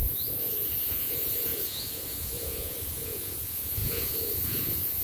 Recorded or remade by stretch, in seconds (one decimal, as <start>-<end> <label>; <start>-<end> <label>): 0.0-5.0 remade